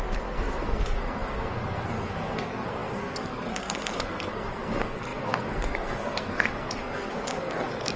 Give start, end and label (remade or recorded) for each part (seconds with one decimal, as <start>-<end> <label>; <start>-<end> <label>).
0.0-8.0 remade